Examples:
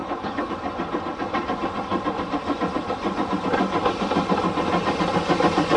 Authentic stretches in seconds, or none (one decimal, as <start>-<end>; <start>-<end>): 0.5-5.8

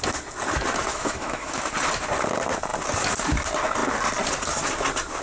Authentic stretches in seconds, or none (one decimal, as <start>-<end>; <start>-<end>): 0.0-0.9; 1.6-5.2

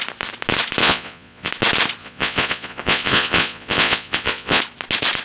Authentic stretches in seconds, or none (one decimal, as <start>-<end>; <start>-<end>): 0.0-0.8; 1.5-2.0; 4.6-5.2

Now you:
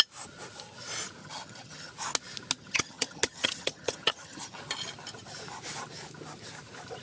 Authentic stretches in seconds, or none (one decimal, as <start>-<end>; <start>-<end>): 0.0-1.2; 1.9-2.6; 4.6-7.0

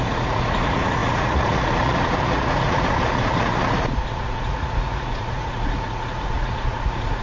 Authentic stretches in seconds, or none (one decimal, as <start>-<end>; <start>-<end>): none

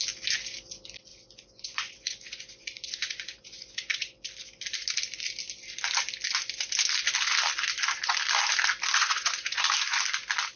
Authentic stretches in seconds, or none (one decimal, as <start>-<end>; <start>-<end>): 0.0-1.1; 4.3-9.0; 9.6-10.6

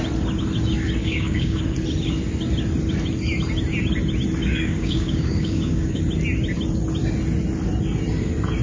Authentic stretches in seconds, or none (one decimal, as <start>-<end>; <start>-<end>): 0.0-1.0; 1.6-4.4; 6.0-8.6

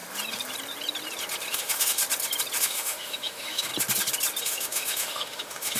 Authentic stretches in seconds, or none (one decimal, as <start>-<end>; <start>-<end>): 0.0-1.5; 2.0-2.6; 3.7-4.4